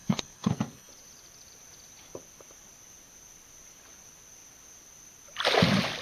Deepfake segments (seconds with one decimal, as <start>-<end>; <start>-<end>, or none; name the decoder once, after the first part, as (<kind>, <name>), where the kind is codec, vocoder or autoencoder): 0.0-0.9 (codec, SNAC)

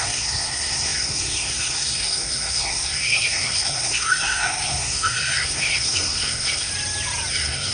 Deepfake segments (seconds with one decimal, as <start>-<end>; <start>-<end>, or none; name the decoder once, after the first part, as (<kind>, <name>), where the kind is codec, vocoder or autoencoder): 0.0-6.7 (codec, SNAC); 7.3-7.7

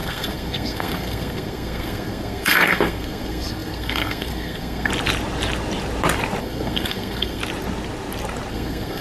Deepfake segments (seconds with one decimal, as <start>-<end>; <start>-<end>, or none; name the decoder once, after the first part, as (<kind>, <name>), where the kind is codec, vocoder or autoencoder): 0.0-4.9 (codec, SNAC); 6.4-7.4; 8.5-9.0